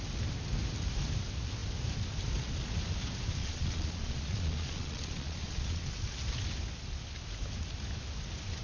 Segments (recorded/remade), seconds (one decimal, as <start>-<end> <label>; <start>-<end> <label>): 0.0-3.4 recorded; 3.4-5.9 remade; 5.9-8.6 recorded